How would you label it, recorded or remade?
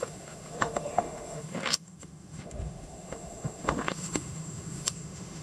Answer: remade